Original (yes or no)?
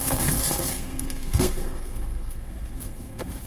no